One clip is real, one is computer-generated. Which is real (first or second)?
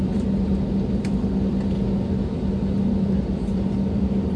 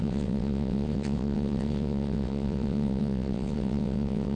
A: first